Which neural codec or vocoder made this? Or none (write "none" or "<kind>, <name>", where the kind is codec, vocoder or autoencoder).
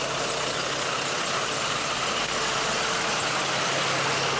none